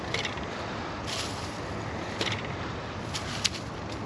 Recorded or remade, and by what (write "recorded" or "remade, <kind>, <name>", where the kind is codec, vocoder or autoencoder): remade, vocoder, BigVGAN v2